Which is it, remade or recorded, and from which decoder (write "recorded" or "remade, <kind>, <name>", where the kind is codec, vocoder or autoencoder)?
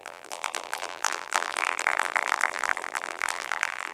remade, vocoder, BigVGAN v2